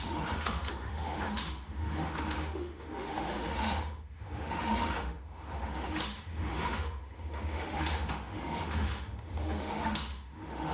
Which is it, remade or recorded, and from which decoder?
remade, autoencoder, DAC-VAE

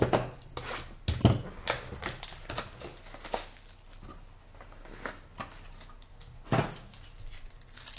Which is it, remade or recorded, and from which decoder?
recorded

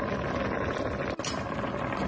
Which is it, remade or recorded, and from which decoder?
recorded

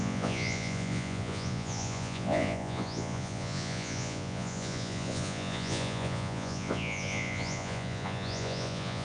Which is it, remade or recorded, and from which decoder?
remade, vocoder, Vocos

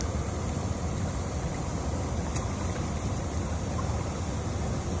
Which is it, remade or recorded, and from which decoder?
recorded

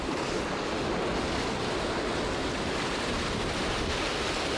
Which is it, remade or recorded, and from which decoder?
recorded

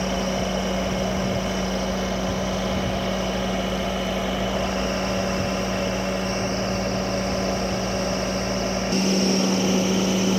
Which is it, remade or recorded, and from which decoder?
recorded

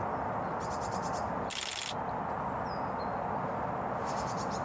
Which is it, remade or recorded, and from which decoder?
recorded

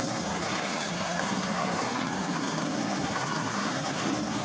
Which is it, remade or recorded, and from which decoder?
remade, codec, SNAC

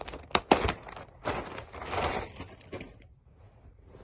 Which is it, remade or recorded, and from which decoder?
recorded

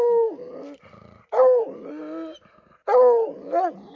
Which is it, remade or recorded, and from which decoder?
recorded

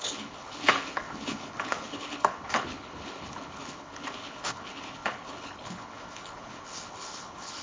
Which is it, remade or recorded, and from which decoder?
remade, codec, HILCodec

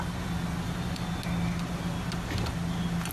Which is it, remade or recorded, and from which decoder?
recorded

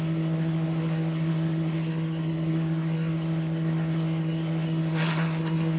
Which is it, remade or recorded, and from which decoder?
remade, codec, SNAC